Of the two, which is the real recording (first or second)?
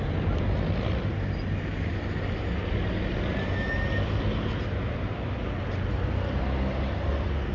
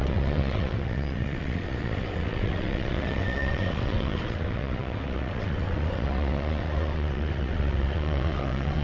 first